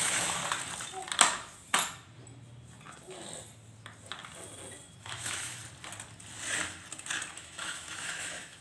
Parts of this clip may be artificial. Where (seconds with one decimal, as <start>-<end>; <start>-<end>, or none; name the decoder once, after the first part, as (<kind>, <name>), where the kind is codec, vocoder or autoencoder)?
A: 0.0-0.4 (autoencoder, DAC-VAE); 5.0-5.6; 7.3-8.6